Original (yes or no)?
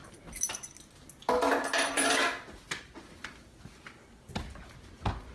yes